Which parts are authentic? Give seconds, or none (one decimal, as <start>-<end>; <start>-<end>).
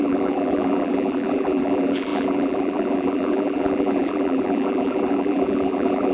none